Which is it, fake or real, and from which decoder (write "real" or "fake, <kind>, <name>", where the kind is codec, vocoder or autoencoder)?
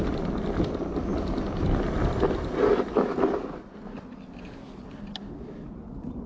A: real